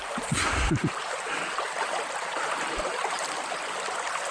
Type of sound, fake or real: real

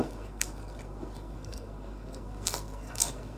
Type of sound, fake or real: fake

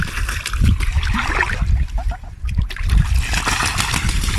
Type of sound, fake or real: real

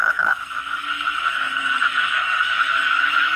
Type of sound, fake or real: fake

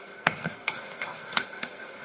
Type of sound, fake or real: fake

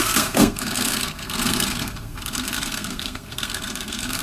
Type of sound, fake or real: fake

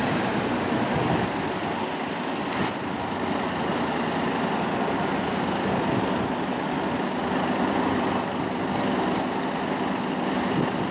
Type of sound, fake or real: real